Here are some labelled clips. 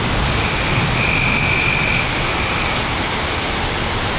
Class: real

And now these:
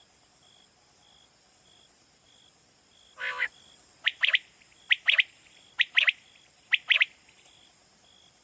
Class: real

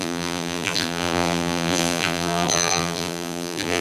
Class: fake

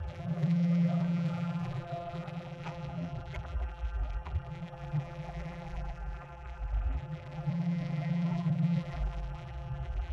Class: fake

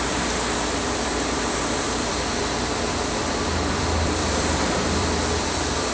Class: fake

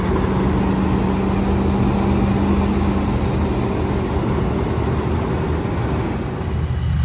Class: real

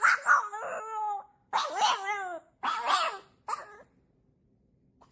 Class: real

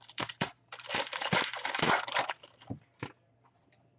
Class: fake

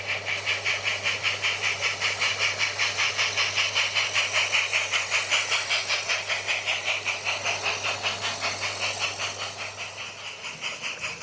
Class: real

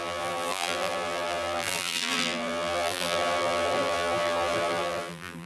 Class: fake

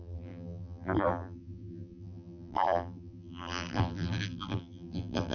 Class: fake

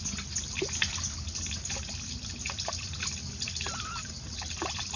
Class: real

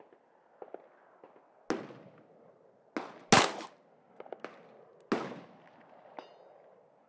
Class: real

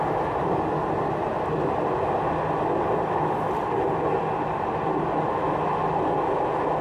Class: real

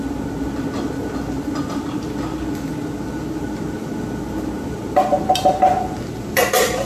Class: real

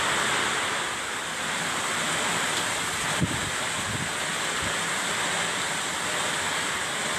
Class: real